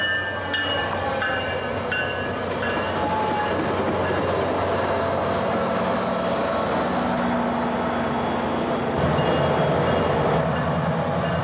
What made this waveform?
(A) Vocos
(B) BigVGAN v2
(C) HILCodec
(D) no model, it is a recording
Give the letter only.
D